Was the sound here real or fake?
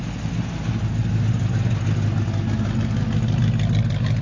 real